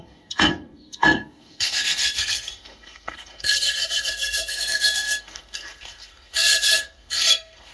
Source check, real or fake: fake